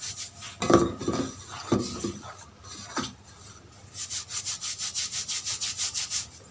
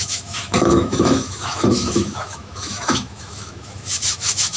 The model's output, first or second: second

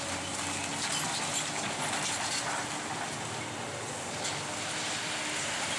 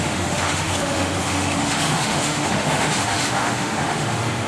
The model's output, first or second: second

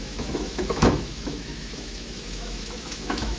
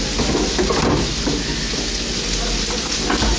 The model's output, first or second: first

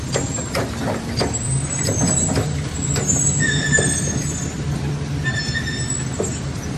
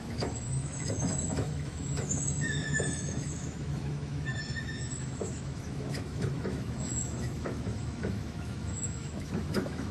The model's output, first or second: second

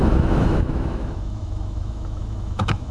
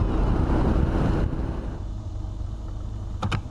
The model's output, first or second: first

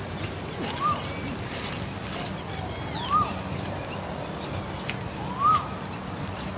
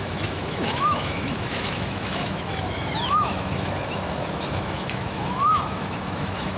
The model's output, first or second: second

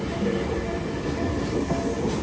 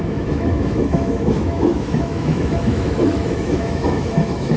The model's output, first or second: second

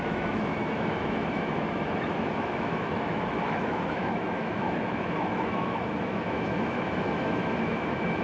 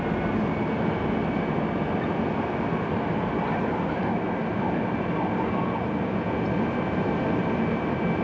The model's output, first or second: first